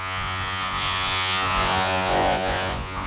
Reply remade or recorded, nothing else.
remade